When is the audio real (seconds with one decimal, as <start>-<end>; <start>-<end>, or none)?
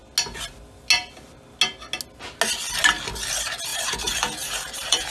0.0-3.7